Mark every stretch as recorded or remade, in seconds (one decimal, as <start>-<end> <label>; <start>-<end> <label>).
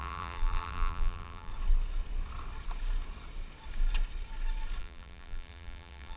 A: 0.0-1.5 remade; 1.5-4.8 recorded; 4.8-6.2 remade